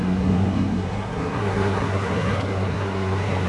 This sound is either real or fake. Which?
fake